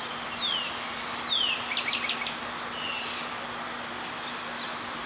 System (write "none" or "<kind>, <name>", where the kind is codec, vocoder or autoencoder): none